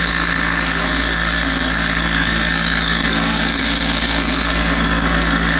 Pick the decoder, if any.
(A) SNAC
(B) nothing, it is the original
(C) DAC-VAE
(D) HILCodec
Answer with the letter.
A